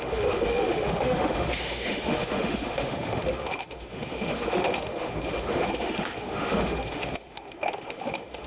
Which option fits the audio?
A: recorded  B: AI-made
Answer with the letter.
B